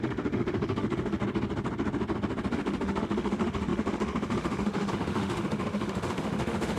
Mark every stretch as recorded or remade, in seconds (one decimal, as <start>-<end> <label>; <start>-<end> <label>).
0.0-1.2 remade; 1.2-2.5 recorded; 2.5-6.8 remade